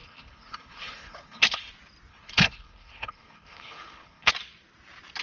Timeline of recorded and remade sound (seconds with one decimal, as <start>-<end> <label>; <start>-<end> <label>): 0.0-1.7 remade; 1.7-2.1 recorded; 2.1-4.3 remade; 4.3-5.2 recorded

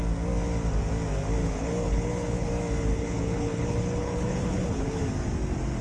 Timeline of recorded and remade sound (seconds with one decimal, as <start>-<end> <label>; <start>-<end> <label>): 0.0-1.4 recorded; 1.4-2.5 remade; 2.5-2.9 recorded; 2.9-5.0 remade; 5.0-5.8 recorded

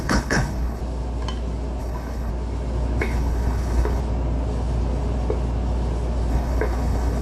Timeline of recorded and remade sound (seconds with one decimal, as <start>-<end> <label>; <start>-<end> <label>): 0.0-0.8 remade; 0.8-1.8 recorded; 1.8-2.3 remade; 2.3-3.0 recorded; 3.0-4.0 remade; 4.0-6.3 recorded; 6.3-7.2 remade

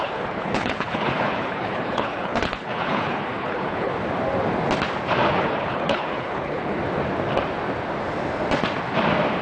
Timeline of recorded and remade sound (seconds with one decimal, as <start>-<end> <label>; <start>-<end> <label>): 0.0-3.9 remade; 3.9-5.3 recorded; 5.3-6.8 remade; 6.8-9.4 recorded

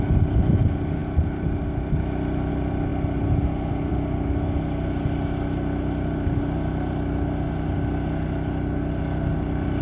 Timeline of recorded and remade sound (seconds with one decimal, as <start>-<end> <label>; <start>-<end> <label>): 0.0-9.8 recorded

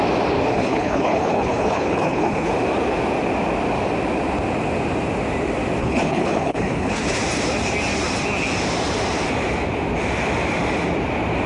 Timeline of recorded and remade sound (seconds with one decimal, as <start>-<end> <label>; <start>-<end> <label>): 0.0-0.5 recorded; 0.5-2.5 remade; 2.5-5.8 recorded; 5.8-7.2 remade; 7.2-11.5 recorded

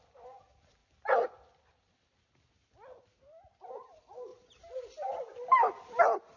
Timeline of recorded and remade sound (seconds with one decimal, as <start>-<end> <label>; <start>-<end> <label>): 0.0-6.4 recorded